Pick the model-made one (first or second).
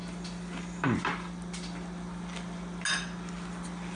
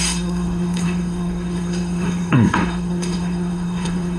second